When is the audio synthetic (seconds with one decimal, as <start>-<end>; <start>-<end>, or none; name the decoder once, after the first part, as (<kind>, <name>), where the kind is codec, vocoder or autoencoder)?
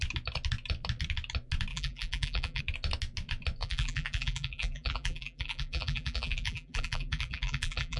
1.7-2.6 (vocoder, BigVGAN v2); 3.6-8.0